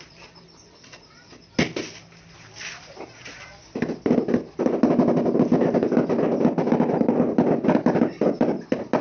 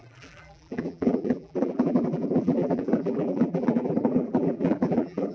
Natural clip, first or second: first